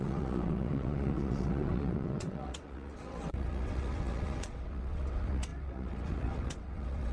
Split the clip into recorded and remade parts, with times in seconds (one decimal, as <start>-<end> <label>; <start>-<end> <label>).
0.0-7.1 remade